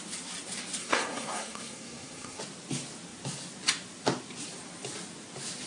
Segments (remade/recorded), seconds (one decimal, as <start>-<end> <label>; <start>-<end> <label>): 0.0-0.8 recorded; 0.8-2.4 remade; 2.4-5.7 recorded